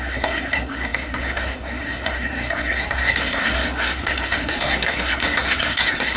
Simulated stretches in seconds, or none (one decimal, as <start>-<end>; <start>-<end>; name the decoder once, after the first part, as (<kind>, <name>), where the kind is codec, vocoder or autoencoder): 0.0-6.2 (codec, SNAC)